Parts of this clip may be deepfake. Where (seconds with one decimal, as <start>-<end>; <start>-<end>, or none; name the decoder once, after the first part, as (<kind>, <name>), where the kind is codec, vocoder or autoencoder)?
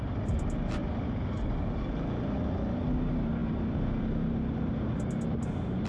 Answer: none